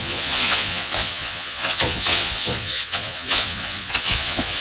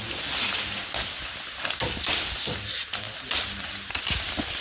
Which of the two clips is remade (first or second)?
first